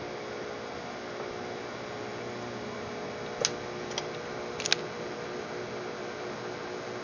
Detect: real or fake real